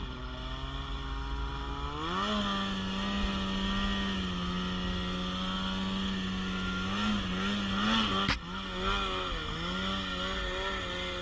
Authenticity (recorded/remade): recorded